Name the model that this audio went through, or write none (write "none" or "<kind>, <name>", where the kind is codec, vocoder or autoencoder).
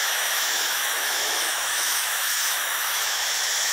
autoencoder, DAC-VAE